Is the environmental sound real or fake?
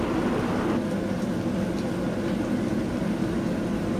real